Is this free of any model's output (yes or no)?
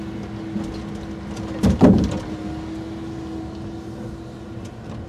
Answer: yes